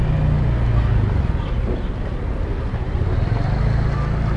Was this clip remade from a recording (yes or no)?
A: no